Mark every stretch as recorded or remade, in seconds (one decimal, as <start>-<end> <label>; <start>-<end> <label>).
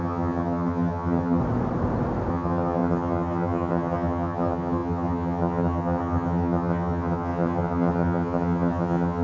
0.0-1.4 remade; 1.4-2.3 recorded; 2.3-9.2 remade